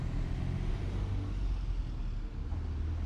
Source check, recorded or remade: recorded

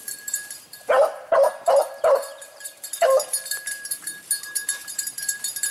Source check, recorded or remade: remade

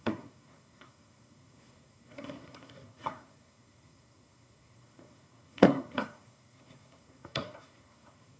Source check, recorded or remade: remade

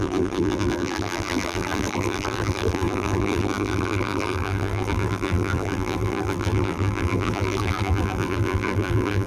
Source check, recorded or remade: remade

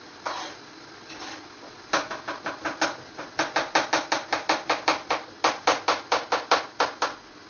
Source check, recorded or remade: recorded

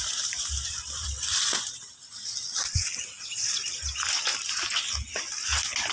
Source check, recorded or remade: recorded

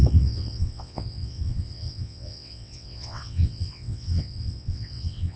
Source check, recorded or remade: remade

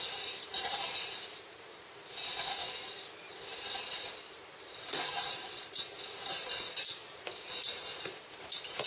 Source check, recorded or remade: remade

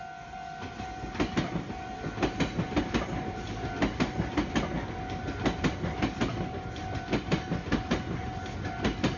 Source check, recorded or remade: recorded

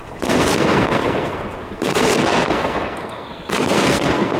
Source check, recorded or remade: remade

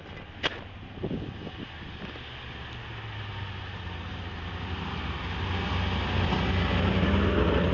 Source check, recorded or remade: recorded